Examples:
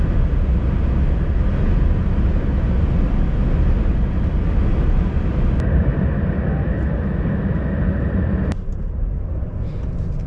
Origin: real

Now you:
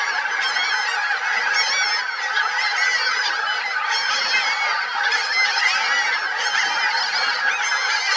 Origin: real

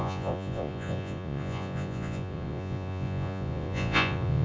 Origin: fake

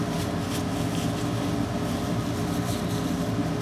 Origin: real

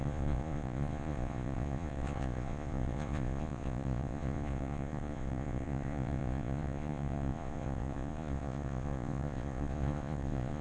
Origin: fake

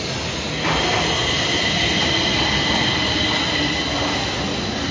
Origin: real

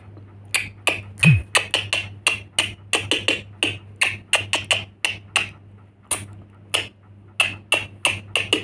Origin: real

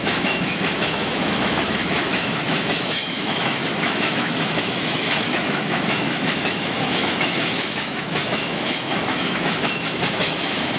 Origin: fake